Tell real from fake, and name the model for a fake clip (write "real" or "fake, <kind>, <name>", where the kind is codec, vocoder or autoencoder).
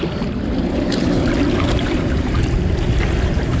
real